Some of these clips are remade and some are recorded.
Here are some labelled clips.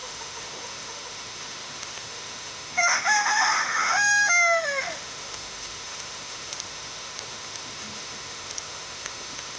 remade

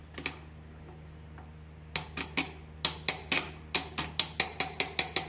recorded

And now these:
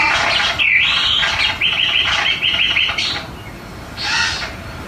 recorded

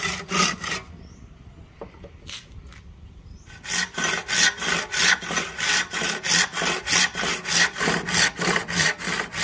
recorded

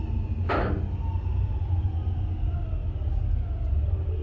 recorded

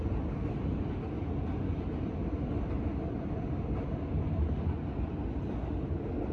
recorded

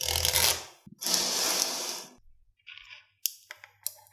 recorded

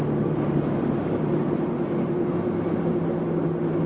recorded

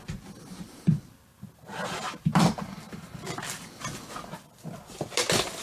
recorded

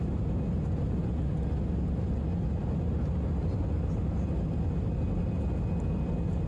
recorded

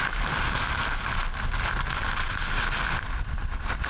recorded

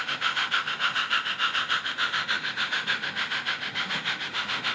remade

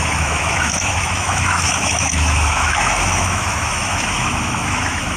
remade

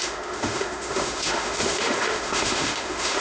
remade